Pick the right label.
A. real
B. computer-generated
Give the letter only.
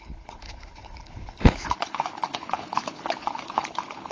B